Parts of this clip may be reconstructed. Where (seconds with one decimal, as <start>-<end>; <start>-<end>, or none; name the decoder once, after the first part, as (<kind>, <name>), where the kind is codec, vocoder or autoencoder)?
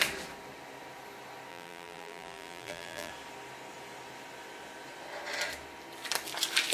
1.5-3.1 (vocoder, BigVGAN v2)